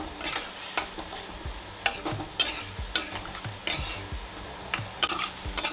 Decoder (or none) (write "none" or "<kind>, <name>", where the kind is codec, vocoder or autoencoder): none